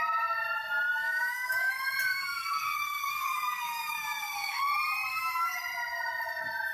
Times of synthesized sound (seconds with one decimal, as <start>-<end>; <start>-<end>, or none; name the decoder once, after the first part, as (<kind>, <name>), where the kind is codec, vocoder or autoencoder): 1.0-1.7 (codec, DAC); 2.1-4.6; 5.1-5.6